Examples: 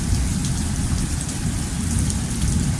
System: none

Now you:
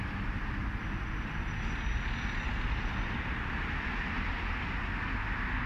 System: none